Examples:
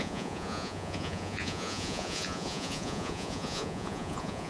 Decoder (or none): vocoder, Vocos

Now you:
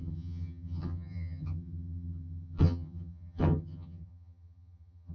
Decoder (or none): vocoder, HiFi-GAN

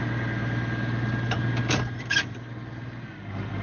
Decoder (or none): none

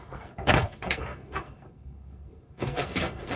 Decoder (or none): codec, SNAC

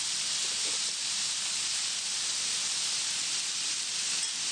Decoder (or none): none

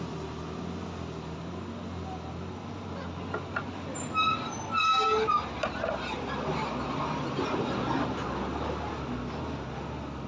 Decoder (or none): none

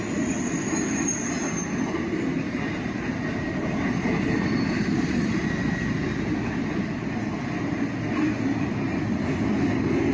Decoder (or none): none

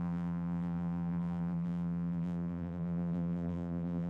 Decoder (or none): vocoder, BigVGAN v2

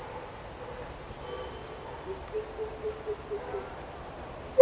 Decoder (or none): none